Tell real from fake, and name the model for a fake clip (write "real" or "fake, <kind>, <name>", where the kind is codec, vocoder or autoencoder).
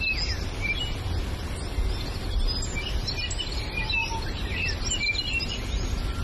real